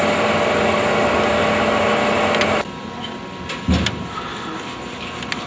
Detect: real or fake real